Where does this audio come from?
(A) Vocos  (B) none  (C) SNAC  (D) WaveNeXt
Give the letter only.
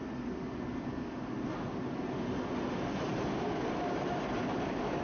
B